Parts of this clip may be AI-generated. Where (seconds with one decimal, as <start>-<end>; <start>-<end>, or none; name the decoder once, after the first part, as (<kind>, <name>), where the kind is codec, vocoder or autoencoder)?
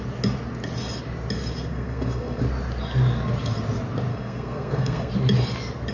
1.7-2.4 (codec, SNAC); 4.1-5.1